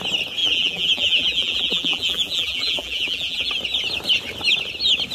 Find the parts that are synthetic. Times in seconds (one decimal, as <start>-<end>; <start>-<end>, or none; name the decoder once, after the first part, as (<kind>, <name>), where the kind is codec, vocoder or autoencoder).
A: 0.4-3.5 (vocoder, BigVGAN v2)